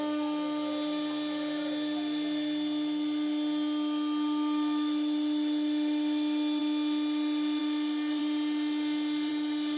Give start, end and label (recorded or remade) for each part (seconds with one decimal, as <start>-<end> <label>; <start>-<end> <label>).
0.0-9.8 recorded